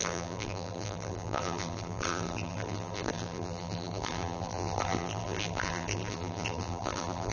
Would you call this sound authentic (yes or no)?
no